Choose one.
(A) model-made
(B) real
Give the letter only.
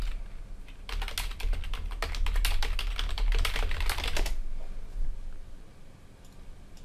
B